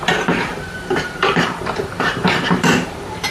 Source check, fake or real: fake